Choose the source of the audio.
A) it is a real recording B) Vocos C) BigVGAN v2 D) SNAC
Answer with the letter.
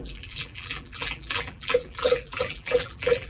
C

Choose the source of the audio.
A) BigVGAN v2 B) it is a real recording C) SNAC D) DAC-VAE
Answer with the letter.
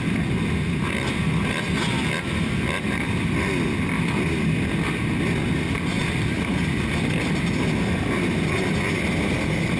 B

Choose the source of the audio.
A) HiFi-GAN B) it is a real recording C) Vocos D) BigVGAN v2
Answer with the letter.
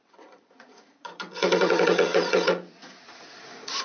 C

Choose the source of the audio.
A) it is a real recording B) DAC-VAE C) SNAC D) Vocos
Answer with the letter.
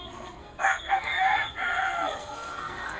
C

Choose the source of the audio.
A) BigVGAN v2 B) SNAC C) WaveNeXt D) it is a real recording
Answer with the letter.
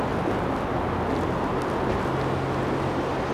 D